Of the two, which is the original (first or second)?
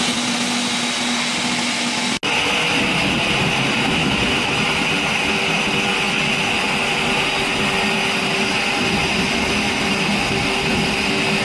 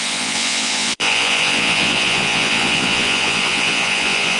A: first